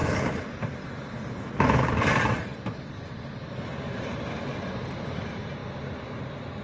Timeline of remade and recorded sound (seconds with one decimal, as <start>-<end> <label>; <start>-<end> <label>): 0.0-4.0 remade; 4.0-6.6 recorded